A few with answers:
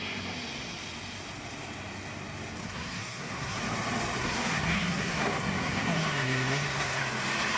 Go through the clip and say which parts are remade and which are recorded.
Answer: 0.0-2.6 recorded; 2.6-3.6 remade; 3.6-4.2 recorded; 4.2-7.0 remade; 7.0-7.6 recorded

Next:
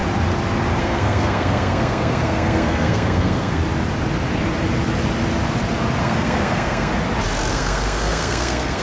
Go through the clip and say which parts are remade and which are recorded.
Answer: 0.0-0.8 recorded; 0.8-3.6 remade; 3.6-6.0 recorded; 6.0-6.9 remade; 6.9-7.5 recorded; 7.5-8.8 remade

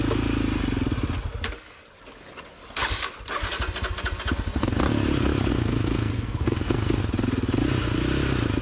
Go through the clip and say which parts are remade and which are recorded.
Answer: 0.0-5.5 recorded; 5.5-7.0 remade; 7.0-8.6 recorded